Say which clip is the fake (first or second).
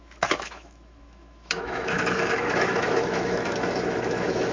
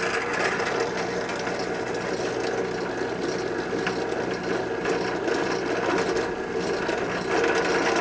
first